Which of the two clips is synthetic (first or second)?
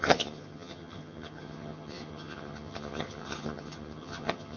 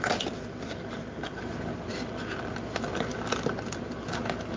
first